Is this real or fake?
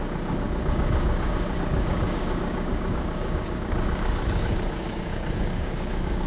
fake